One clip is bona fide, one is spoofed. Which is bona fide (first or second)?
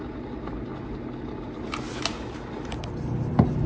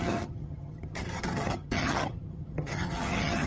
first